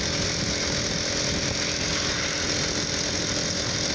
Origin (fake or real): real